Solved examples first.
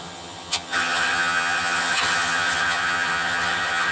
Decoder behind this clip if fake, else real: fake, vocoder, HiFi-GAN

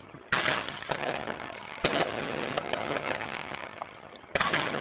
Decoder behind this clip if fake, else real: fake, vocoder, HiFi-GAN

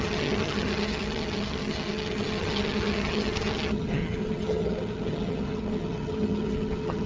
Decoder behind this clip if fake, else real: fake, vocoder, HiFi-GAN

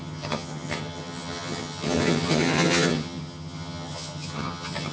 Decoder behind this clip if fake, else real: fake, vocoder, HiFi-GAN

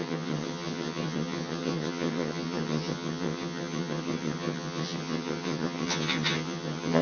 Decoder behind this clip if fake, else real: fake, vocoder, HiFi-GAN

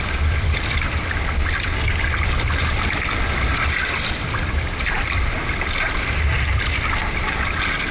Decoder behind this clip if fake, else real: real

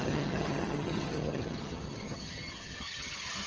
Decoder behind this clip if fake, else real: fake, vocoder, HiFi-GAN